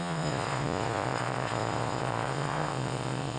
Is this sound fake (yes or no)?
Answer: yes